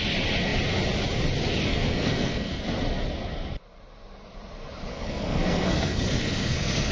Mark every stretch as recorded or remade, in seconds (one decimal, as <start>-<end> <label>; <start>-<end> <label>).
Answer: 0.0-1.7 recorded; 1.7-2.6 remade; 2.6-4.9 recorded; 4.9-6.9 remade